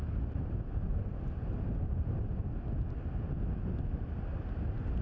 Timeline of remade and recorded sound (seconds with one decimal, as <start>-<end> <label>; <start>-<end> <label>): 0.0-5.0 recorded